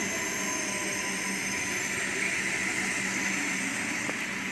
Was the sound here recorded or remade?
recorded